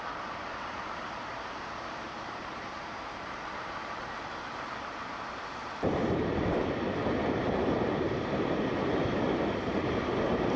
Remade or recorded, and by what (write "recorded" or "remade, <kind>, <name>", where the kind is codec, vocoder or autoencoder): remade, vocoder, BigVGAN v2